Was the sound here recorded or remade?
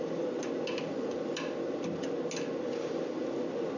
recorded